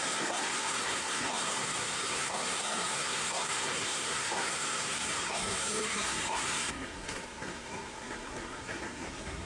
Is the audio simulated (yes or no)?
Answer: yes